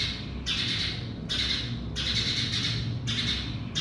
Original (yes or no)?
yes